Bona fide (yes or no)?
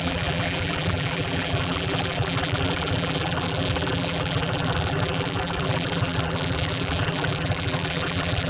no